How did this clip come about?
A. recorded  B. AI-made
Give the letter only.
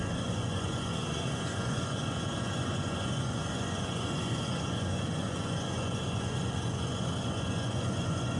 B